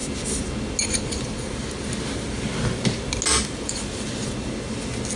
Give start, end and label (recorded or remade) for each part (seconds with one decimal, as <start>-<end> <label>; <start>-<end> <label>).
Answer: 0.0-5.2 recorded